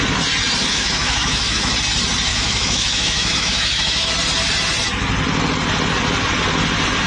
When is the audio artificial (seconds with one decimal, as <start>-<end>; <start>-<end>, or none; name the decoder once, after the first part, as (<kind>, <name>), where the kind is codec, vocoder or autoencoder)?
0.7-1.7 (autoencoder, DAC-VAE); 2.3-4.1